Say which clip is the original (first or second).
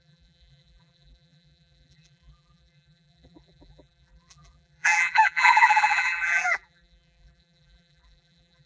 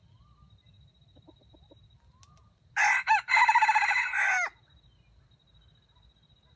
second